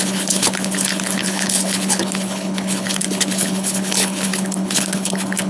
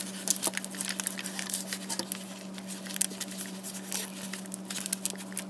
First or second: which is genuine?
second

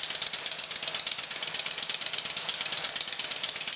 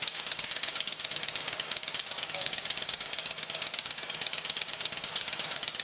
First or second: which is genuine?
first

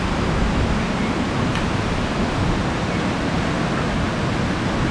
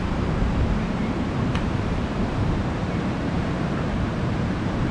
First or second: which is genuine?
first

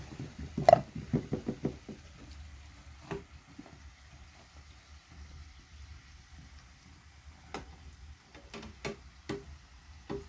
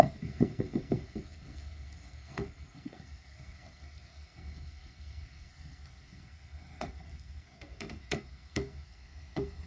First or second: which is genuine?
first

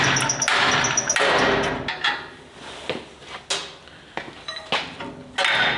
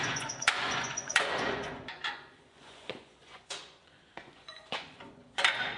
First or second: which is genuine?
first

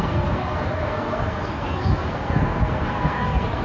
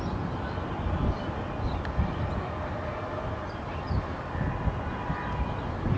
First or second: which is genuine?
second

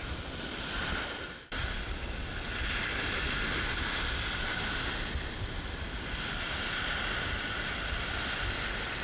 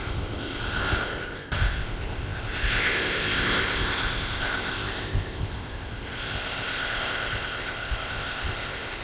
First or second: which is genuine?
first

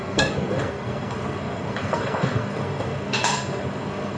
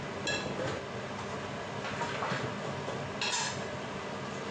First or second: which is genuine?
second